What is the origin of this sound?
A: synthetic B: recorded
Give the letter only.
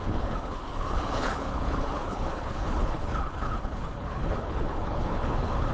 A